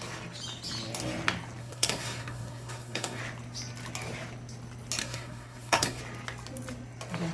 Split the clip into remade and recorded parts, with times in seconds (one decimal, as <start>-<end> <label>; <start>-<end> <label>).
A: 0.0-1.6 recorded; 1.6-3.2 remade; 3.2-5.0 recorded; 5.0-6.0 remade; 6.0-7.3 recorded